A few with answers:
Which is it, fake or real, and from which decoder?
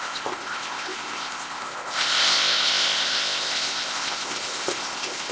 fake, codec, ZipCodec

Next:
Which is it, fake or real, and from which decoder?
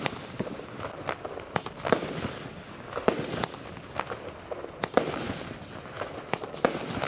real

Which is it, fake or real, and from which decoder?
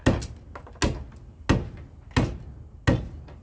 real